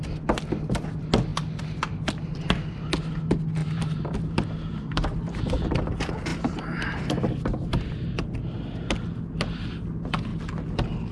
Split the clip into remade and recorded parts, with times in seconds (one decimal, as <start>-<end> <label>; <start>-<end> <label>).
0.0-3.6 recorded; 3.6-5.4 remade; 5.4-6.3 recorded; 6.3-8.3 remade; 8.3-11.1 recorded

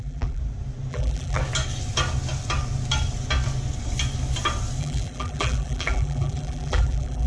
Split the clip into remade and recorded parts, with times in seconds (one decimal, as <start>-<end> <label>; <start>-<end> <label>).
0.0-0.4 remade; 0.4-0.9 recorded; 0.9-1.4 remade; 1.4-4.8 recorded; 4.8-7.3 remade

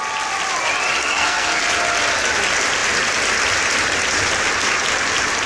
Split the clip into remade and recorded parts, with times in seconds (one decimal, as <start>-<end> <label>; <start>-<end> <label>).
0.0-1.0 recorded; 1.0-1.6 remade; 1.6-5.5 recorded

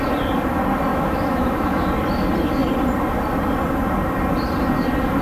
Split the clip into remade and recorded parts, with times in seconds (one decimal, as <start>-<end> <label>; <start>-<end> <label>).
0.0-0.9 recorded; 0.9-1.9 remade; 1.9-5.2 recorded

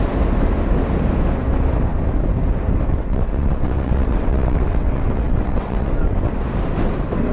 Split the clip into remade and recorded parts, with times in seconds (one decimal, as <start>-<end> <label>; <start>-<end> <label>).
0.0-2.9 recorded; 2.9-6.3 remade; 6.3-7.3 recorded

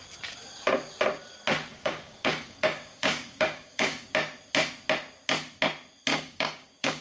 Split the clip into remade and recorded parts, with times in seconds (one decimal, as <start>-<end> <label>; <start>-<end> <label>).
0.0-1.7 recorded; 1.7-4.1 remade; 4.1-6.1 recorded; 6.1-7.0 remade

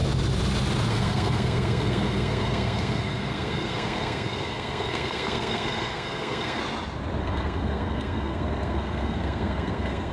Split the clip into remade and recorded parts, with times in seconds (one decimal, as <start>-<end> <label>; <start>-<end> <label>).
0.0-0.9 recorded; 0.9-6.6 remade; 6.6-7.2 recorded; 7.2-10.1 remade

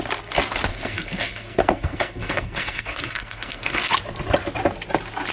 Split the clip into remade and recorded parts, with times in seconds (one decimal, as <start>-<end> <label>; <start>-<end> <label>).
0.0-0.7 recorded; 0.7-3.9 remade; 3.9-5.3 recorded